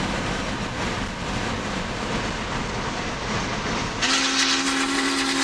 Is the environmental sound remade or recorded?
recorded